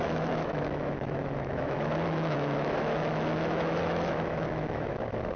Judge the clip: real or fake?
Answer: fake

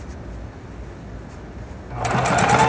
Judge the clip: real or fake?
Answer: real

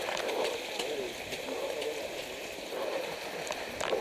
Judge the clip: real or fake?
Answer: real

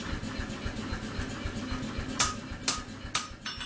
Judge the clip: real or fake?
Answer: real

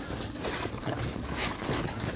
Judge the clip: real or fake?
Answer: fake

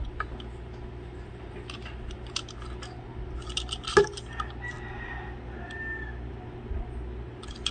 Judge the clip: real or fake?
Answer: real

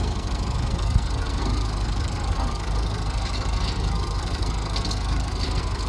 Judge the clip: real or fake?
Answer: fake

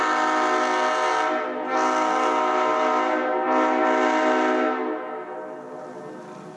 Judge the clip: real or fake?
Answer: real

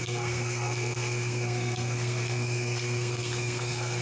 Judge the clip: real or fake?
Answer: fake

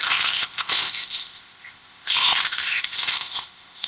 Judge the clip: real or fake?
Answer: fake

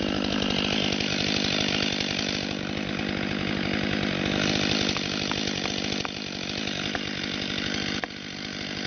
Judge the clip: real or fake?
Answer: real